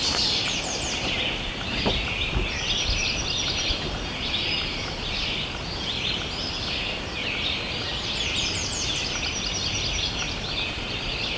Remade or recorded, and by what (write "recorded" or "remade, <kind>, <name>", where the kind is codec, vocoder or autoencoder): recorded